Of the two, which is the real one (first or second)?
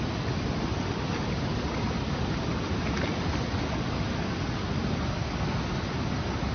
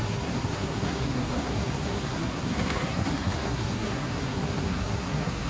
first